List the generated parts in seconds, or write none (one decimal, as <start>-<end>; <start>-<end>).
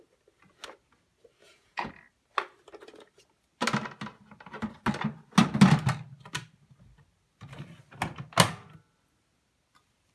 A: 1.4-1.9